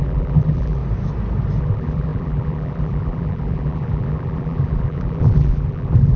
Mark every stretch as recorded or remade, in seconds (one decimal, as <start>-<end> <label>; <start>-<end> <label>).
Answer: 0.0-0.8 remade; 0.8-1.6 recorded; 1.6-6.2 remade